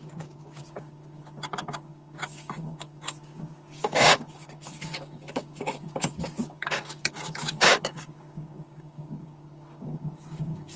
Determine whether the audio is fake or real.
fake